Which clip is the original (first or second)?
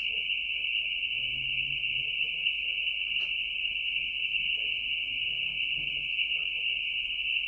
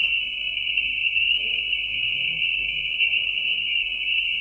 first